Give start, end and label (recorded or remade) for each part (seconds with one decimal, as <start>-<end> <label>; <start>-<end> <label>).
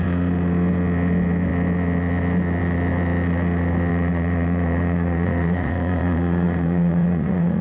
0.0-3.9 recorded; 3.9-7.6 remade